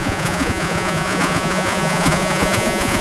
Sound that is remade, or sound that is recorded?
remade